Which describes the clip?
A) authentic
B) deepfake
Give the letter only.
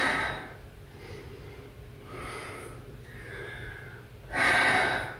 A